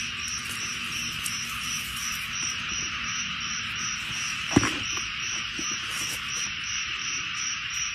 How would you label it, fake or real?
real